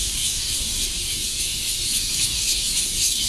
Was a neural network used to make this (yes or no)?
yes